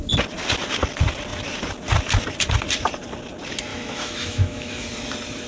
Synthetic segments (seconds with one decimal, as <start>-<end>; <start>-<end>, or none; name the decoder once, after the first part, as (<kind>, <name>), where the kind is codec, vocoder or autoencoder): 3.7-4.9 (autoencoder, DAC-VAE)